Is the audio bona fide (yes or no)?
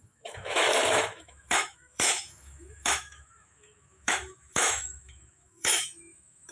no